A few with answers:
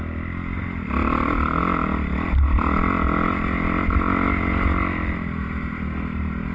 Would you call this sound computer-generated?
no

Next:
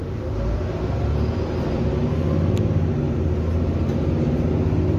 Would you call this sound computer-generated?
no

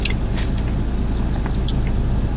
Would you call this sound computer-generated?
no